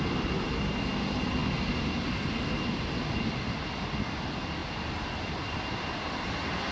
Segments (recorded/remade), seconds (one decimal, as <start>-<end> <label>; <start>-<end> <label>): 0.0-6.7 recorded